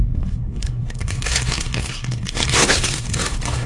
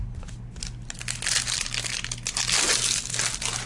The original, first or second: second